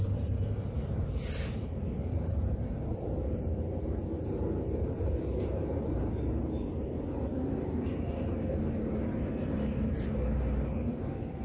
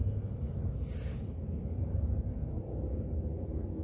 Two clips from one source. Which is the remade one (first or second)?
first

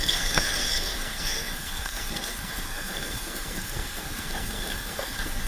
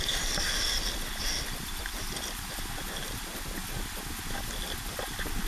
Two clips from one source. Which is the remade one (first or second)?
first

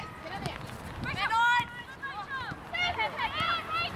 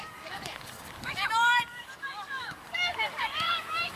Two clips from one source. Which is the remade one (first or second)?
second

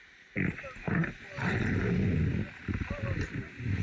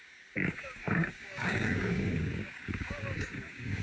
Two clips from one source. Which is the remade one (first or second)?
second